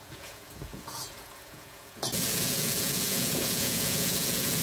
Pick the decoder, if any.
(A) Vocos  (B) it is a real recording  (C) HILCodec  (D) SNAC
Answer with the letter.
A